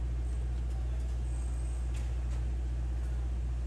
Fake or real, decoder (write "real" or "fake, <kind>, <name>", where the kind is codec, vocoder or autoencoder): real